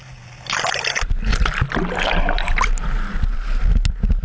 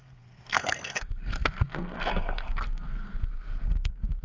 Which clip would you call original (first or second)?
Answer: first